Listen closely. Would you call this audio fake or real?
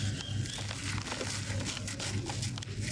real